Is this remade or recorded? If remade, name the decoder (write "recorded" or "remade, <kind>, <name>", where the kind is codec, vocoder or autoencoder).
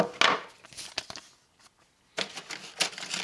recorded